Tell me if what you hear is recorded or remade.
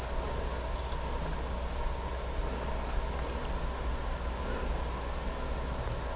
recorded